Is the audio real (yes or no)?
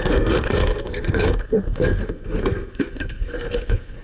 no